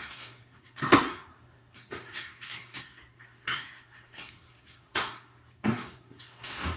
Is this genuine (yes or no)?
no